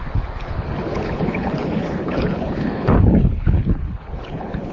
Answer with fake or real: fake